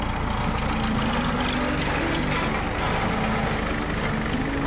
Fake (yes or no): no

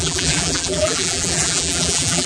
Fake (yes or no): yes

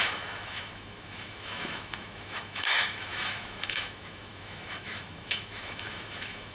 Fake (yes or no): yes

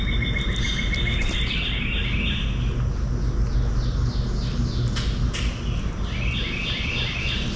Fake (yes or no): no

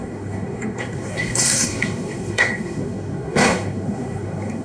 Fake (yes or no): yes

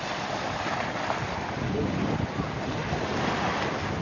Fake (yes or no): no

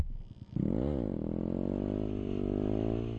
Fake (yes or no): no